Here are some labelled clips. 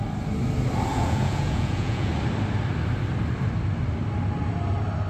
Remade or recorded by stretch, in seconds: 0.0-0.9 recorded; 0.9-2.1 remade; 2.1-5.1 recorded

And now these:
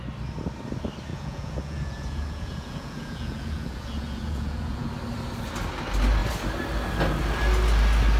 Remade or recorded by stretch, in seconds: 0.0-1.1 recorded; 1.1-4.9 remade; 4.9-8.2 recorded